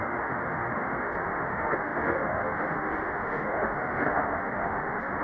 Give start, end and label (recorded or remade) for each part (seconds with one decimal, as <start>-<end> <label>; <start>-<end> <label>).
0.0-5.2 remade